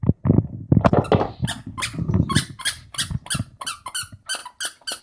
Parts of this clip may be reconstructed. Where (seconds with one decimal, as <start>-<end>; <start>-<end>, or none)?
none